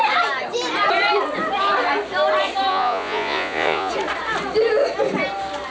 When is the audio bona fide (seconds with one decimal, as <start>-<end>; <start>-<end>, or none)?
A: 0.0-2.7; 3.9-5.7